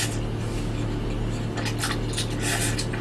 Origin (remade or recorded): recorded